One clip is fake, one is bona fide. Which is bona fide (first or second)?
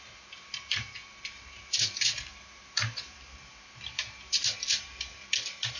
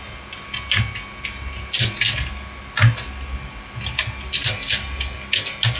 second